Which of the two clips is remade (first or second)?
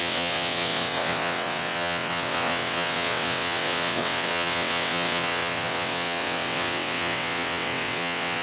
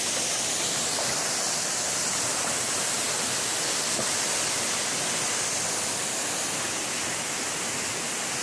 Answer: first